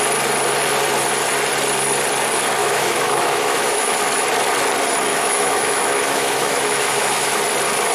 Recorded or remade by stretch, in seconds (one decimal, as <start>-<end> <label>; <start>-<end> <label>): 0.0-2.6 recorded; 2.6-4.0 remade; 4.0-5.1 recorded; 5.1-7.4 remade; 7.4-7.9 recorded